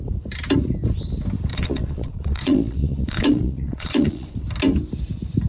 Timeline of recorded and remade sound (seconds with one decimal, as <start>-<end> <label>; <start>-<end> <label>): 0.0-1.5 recorded; 1.5-4.3 remade; 4.3-5.5 recorded